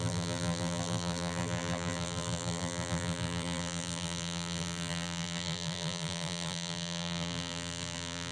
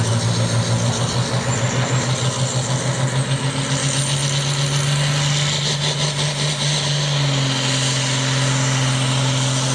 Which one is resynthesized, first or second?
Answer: first